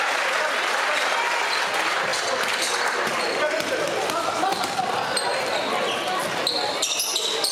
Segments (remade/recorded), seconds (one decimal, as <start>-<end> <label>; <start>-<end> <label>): 0.0-2.1 remade; 2.1-2.7 recorded; 2.7-5.3 remade; 5.3-6.7 recorded; 6.7-7.5 remade